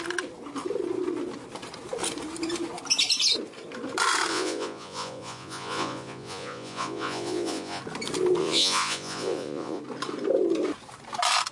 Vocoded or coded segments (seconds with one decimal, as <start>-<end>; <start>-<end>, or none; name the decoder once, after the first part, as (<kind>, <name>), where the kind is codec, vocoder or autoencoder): 4.3-7.8 (vocoder, Vocos); 8.4-9.8